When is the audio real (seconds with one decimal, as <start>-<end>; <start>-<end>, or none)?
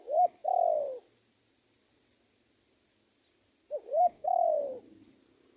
0.0-3.9; 4.6-5.6